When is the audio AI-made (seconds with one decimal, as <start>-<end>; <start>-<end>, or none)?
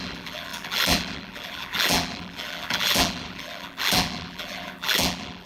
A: 0.0-5.5